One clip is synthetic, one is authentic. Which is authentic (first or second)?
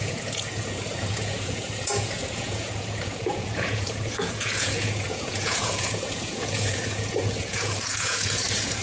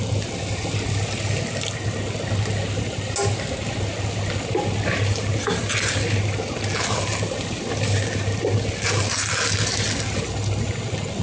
second